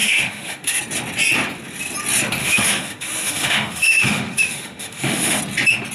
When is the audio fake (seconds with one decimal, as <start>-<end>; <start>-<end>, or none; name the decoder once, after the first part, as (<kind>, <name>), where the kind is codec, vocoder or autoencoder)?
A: 0.0-0.8 (autoencoder, DAC-VAE); 2.4-5.4